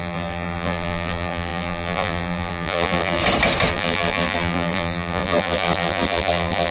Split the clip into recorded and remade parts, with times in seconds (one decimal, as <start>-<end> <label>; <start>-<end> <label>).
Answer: 0.0-3.2 remade; 3.2-3.7 recorded; 3.7-6.7 remade